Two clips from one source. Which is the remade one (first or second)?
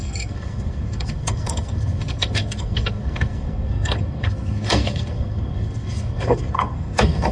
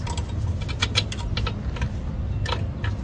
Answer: first